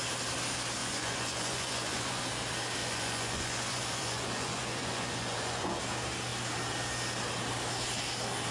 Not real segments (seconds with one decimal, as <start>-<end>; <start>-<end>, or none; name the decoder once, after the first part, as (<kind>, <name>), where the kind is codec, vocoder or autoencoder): 0.8-2.2 (vocoder, Vocos); 2.8-5.8